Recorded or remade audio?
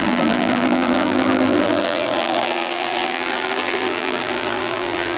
remade